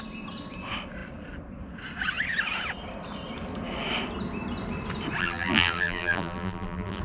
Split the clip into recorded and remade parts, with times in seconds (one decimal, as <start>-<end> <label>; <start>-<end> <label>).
0.0-5.2 recorded; 5.2-7.0 remade

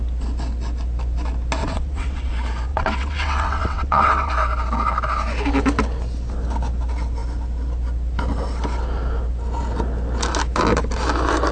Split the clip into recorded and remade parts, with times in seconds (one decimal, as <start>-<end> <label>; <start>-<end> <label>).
0.0-1.6 recorded; 1.6-2.3 remade; 2.3-2.7 recorded; 2.7-4.3 remade; 4.3-11.5 recorded

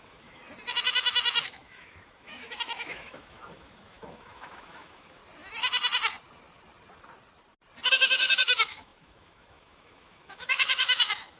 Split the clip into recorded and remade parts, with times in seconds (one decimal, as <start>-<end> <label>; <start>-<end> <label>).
0.0-0.4 remade; 0.4-1.4 recorded; 1.4-5.2 remade; 5.2-7.9 recorded; 7.9-11.4 remade

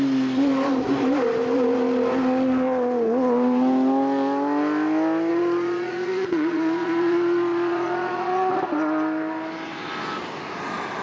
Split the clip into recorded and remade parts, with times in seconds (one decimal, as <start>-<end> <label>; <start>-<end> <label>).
0.0-5.3 recorded; 5.3-8.5 remade; 8.5-11.0 recorded

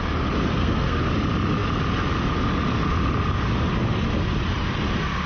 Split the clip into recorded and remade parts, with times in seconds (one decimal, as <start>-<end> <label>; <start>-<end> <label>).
0.0-0.5 recorded; 0.5-1.0 remade; 1.0-5.3 recorded